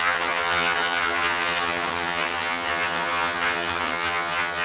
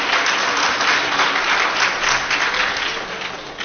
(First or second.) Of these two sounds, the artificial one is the first